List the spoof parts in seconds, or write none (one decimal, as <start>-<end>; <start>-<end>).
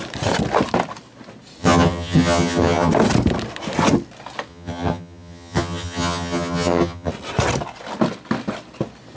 1.6-2.9; 4.5-7.1